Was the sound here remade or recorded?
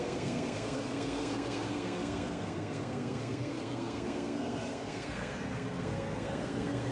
remade